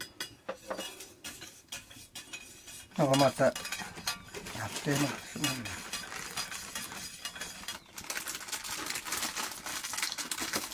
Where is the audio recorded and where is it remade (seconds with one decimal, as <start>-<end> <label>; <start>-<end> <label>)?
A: 0.0-1.1 recorded; 1.1-2.0 remade; 2.0-9.7 recorded; 9.7-10.7 remade